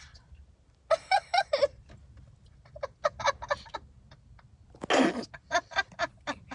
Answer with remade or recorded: recorded